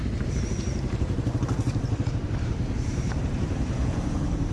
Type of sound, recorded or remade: remade